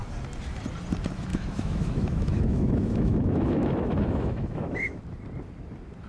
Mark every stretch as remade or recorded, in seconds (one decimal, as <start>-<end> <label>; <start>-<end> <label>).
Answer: 0.0-1.3 recorded; 1.3-5.0 remade; 5.0-6.1 recorded